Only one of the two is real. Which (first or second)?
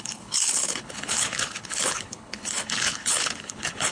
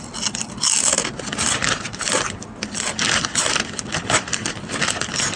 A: second